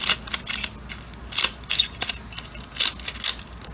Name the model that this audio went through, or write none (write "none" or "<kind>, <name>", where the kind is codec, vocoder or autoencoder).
none